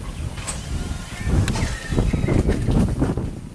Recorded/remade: recorded